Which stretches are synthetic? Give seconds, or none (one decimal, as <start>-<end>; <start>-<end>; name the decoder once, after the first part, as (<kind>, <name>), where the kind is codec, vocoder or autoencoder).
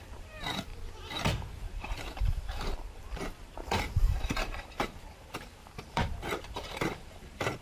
0.0-0.7 (vocoder, BigVGAN v2); 1.6-7.6